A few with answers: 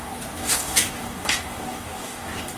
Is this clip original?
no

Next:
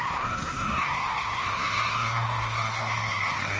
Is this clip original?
no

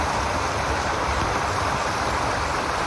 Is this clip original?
yes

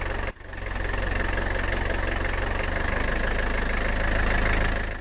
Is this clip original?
yes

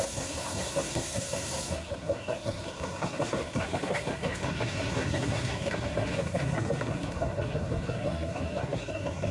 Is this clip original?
no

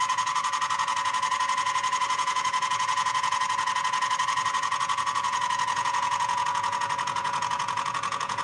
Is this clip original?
no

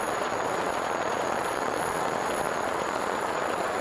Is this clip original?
no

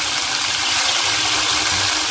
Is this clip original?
yes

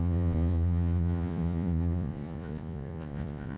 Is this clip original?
no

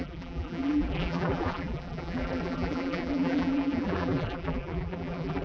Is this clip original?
no